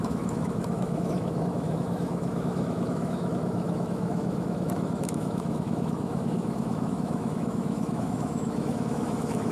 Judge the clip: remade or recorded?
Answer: remade